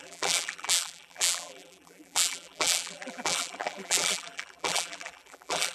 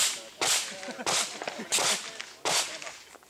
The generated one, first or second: first